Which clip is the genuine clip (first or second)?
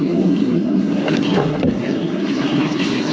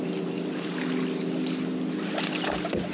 second